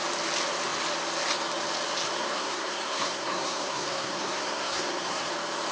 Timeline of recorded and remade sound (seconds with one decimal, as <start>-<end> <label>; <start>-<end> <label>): 0.0-2.2 recorded; 2.2-5.3 remade; 5.3-5.7 recorded